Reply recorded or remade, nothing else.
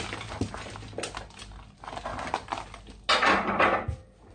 recorded